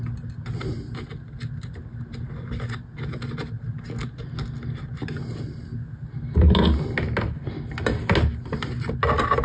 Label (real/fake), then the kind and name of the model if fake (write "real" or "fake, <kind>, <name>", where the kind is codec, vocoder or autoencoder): real